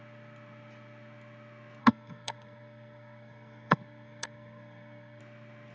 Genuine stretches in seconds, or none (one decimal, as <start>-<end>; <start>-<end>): 0.0-1.8; 5.2-5.7